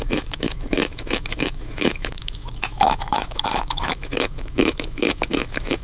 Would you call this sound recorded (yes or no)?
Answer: no